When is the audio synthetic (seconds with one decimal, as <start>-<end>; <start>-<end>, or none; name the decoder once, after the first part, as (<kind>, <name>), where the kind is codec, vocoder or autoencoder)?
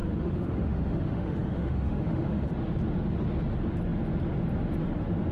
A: 0.0-2.5 (autoencoder, DAC-VAE)